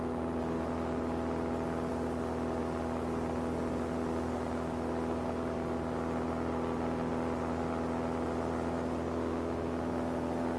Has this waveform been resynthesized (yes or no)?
no